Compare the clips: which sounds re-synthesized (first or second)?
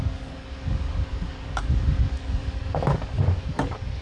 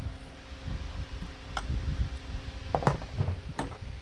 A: first